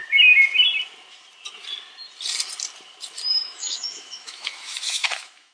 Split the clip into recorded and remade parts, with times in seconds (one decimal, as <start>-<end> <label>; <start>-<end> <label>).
0.0-3.3 recorded; 3.3-5.5 remade